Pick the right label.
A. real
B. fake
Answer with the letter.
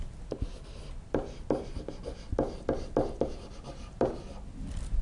A